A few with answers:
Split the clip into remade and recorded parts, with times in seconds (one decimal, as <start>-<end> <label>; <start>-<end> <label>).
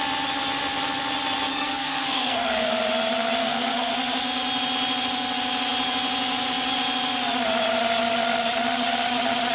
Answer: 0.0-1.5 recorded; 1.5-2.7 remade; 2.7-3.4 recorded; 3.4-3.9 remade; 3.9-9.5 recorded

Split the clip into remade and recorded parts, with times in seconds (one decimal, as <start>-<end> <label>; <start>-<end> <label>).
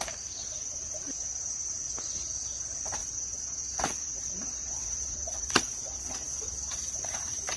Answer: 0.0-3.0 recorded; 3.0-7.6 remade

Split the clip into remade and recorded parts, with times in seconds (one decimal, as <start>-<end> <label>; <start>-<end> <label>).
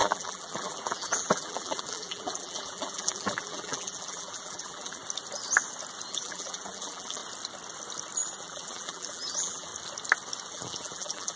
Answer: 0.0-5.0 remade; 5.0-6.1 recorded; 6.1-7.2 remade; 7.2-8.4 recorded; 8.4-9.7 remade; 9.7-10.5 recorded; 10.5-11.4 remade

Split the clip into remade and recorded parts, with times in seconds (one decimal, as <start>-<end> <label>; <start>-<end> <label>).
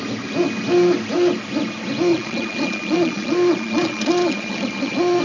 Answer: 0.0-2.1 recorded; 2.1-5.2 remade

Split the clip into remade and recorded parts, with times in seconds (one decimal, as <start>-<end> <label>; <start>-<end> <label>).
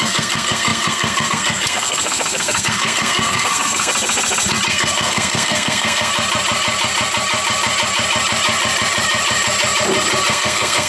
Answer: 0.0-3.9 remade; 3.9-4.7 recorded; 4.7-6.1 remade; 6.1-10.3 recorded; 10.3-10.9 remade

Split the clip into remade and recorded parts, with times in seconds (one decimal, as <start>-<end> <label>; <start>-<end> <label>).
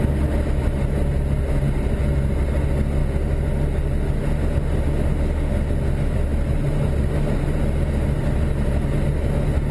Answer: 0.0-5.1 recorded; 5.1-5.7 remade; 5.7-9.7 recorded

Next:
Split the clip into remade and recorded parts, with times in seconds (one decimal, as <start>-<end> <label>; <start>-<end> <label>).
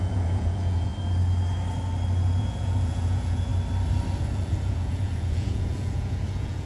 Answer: 0.0-0.9 remade; 0.9-2.4 recorded; 2.4-3.5 remade; 3.5-4.2 recorded; 4.2-6.7 remade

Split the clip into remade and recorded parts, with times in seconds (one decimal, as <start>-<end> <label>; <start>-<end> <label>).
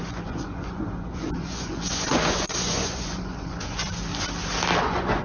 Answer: 0.0-4.1 remade; 4.1-4.8 recorded; 4.8-5.2 remade